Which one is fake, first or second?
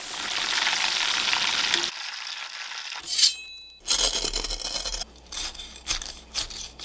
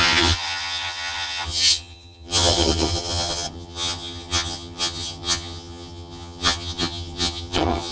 second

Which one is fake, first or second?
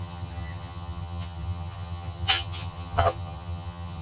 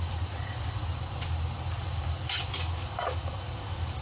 first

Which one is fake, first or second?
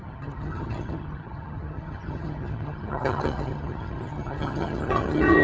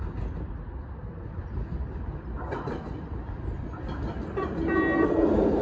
first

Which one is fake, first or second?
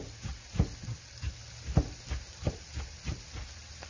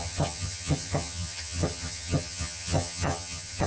second